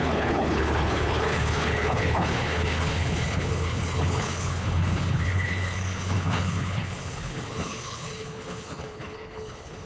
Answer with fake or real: fake